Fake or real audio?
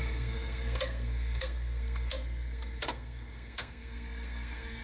fake